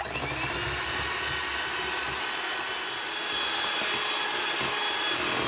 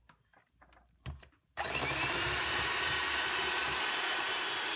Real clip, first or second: first